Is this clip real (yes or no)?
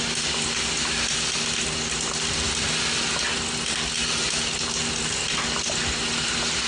yes